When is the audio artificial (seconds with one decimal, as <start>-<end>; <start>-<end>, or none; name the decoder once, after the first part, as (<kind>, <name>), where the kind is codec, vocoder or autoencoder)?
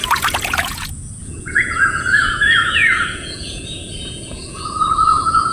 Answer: 0.0-5.5 (vocoder, Vocos)